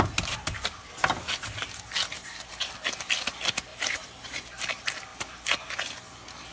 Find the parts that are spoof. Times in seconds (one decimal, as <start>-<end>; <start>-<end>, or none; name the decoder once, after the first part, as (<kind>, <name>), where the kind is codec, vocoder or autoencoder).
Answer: 2.2-2.7 (vocoder, BigVGAN v2); 3.7-4.5